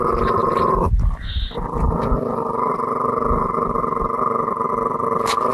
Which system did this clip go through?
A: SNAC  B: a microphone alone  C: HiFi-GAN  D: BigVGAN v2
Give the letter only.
B